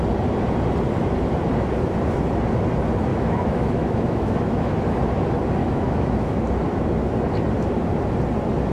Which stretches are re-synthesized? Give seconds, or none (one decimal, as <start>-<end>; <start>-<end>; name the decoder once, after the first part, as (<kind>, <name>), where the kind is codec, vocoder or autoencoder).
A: 3.1-4.7 (autoencoder, DAC-VAE); 5.6-6.4